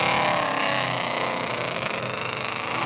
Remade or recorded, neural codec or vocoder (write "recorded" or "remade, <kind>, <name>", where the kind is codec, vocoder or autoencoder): remade, autoencoder, DAC-VAE